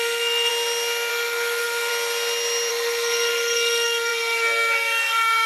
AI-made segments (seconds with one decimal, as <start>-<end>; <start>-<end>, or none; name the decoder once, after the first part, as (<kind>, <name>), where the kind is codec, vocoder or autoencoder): 0.0-0.5 (codec, SNAC); 1.1-1.9; 2.7-5.5

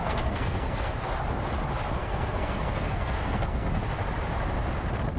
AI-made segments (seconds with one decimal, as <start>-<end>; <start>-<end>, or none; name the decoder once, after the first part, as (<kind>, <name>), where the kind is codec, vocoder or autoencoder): 0.0-1.1 (codec, SNAC); 2.0-3.8

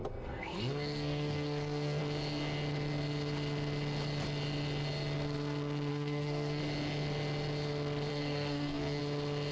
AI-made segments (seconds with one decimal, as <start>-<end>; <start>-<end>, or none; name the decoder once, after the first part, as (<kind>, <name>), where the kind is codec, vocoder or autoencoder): 0.0-2.0 (codec, SNAC); 5.9-6.6; 8.1-9.0

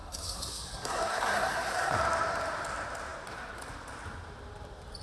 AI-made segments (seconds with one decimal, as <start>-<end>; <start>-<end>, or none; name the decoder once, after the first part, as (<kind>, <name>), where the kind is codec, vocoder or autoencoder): 0.0-2.0 (codec, SNAC)

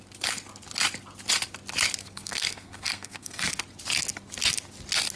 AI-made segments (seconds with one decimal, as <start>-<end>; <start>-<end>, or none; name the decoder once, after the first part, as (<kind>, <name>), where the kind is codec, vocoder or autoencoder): 2.0-3.5 (codec, SNAC)

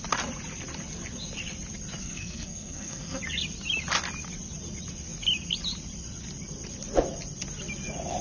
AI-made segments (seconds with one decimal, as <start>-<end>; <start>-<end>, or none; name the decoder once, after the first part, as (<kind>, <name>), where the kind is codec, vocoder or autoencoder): 2.0-3.2 (codec, SNAC)

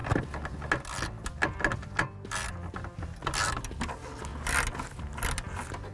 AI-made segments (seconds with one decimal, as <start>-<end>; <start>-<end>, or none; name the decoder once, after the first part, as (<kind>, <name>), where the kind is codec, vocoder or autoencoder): none

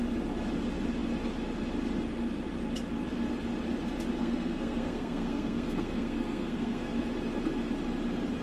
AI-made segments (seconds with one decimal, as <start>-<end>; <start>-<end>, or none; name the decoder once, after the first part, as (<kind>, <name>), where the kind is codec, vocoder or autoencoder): 4.2-6.9 (codec, SNAC)